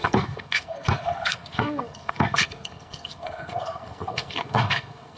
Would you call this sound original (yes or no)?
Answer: no